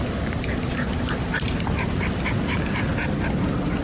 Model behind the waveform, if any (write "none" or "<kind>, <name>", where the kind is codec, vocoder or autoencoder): none